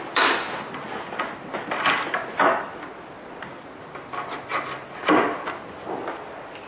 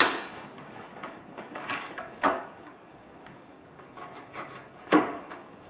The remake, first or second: second